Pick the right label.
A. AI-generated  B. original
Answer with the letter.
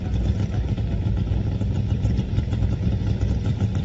A